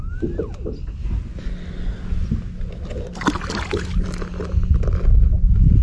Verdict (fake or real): real